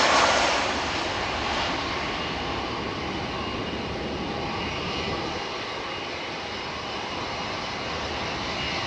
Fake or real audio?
real